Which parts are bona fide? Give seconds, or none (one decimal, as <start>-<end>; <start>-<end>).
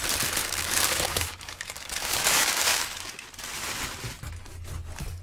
0.0-0.4; 3.1-5.2